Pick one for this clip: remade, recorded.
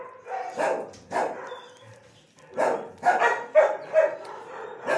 recorded